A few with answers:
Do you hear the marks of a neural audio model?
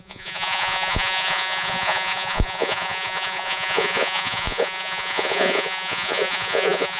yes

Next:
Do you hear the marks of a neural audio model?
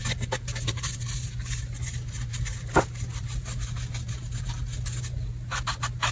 no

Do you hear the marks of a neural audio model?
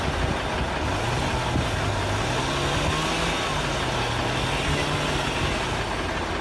no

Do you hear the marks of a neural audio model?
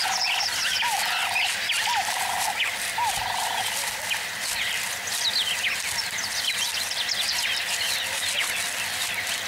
no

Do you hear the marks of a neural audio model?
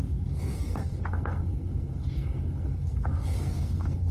yes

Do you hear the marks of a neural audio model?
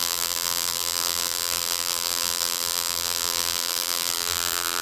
yes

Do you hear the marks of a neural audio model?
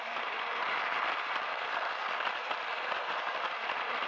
no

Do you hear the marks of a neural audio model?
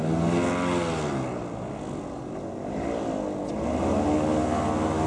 no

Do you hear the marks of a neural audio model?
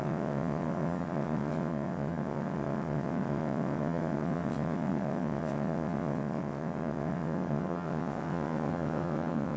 yes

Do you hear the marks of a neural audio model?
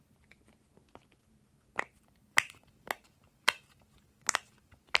yes